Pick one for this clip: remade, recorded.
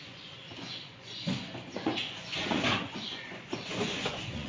remade